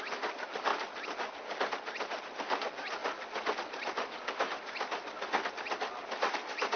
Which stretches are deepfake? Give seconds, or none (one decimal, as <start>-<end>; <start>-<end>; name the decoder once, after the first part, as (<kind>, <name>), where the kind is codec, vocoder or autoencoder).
none